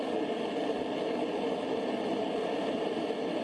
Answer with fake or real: real